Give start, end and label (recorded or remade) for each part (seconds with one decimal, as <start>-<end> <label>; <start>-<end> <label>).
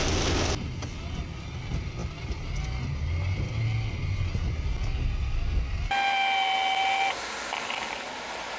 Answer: 0.0-8.6 recorded